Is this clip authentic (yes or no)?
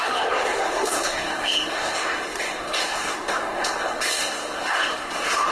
no